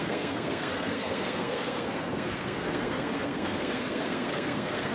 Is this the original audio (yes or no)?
no